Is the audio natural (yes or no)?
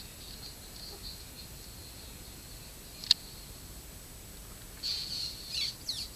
yes